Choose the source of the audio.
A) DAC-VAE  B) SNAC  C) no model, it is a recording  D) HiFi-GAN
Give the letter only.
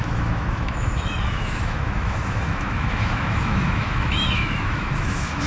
A